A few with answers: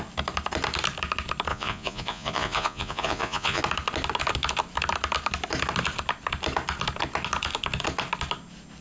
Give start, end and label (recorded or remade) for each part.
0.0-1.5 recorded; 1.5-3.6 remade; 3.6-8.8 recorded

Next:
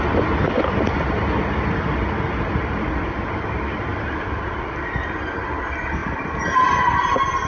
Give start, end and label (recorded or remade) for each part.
0.0-7.5 recorded

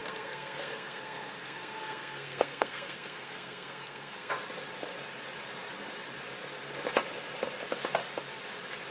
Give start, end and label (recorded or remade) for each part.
0.0-4.3 remade; 4.3-8.9 recorded